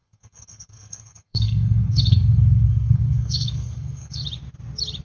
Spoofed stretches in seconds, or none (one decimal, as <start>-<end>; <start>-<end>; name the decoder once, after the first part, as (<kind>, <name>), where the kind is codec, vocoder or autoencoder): 0.0-4.2 (codec, SNAC)